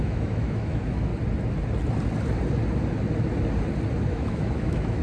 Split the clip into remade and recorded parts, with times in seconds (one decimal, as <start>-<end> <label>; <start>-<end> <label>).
0.0-1.1 remade; 1.1-4.1 recorded; 4.1-5.0 remade

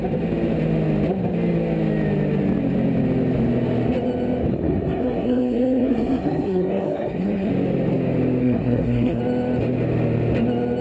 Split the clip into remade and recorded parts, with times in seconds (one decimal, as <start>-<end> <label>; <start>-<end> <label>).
0.0-4.5 recorded; 4.5-7.5 remade; 7.5-8.4 recorded; 8.4-9.2 remade; 9.2-10.8 recorded

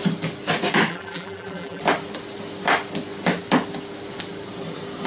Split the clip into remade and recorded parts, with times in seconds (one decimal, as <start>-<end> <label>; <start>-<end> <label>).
0.0-0.9 recorded; 0.9-1.8 remade; 1.8-5.1 recorded

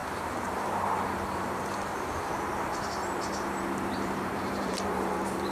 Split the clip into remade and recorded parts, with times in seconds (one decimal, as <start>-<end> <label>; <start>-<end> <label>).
0.0-5.5 remade

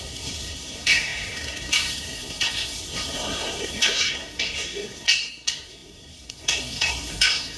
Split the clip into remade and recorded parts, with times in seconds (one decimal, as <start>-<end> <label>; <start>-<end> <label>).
0.0-7.6 remade

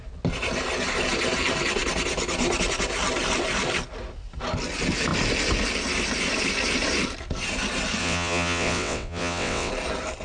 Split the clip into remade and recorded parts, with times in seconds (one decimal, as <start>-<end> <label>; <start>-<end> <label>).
0.0-8.0 recorded; 8.0-9.7 remade; 9.7-10.2 recorded